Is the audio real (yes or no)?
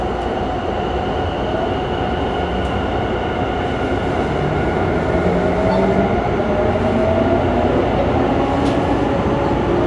yes